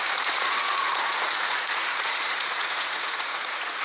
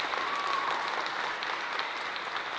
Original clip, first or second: second